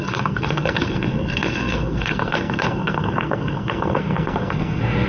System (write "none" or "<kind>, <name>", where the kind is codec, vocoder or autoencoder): codec, SNAC